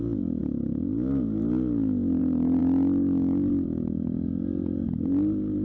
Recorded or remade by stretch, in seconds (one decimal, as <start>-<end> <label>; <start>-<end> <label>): 0.0-5.6 recorded

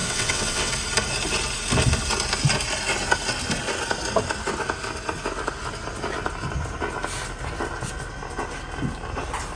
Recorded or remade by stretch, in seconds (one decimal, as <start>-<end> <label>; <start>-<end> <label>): 0.0-0.7 remade; 0.7-9.6 recorded

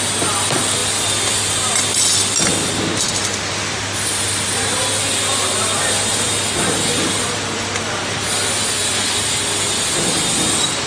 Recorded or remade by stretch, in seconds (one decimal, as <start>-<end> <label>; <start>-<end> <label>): 0.0-10.9 recorded